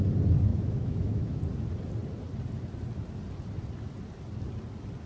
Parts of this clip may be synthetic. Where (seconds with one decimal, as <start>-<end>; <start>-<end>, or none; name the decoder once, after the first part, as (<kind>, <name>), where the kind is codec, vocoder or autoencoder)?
0.5-1.4 (autoencoder, DAC-VAE)